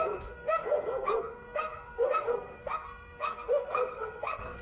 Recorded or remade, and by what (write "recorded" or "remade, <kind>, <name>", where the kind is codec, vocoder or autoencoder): remade, codec, SNAC